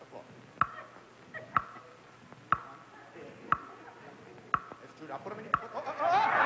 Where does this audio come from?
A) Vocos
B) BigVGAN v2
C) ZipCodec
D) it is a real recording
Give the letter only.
D